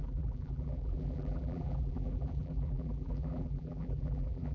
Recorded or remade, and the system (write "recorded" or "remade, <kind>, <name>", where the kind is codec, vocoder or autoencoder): remade, vocoder, BigVGAN v2